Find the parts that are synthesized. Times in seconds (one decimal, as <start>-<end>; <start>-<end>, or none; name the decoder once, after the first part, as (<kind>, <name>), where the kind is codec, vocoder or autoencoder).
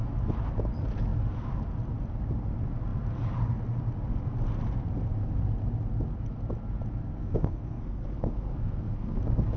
7.2-9.2 (codec, SNAC)